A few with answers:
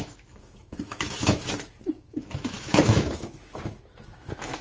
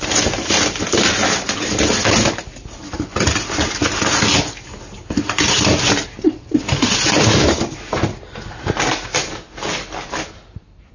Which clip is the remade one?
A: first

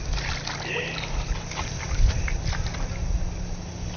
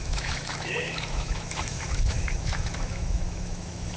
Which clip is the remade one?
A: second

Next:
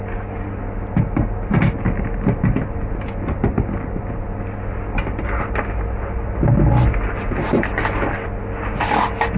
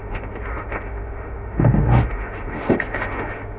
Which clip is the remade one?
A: second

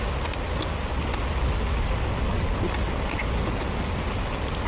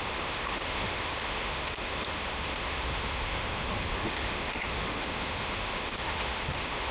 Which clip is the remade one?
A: second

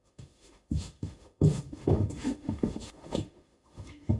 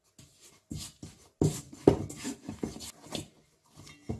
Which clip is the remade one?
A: first